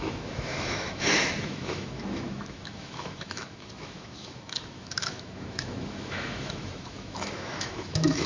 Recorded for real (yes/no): no